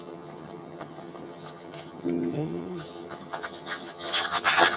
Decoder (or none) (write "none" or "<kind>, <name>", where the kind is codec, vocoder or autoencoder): vocoder, HiFi-GAN